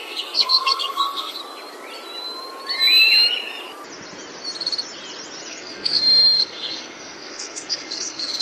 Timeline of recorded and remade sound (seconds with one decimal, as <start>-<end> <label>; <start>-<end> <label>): 0.0-1.4 remade; 1.4-5.5 recorded; 5.5-8.4 remade